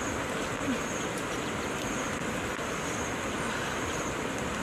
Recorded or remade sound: recorded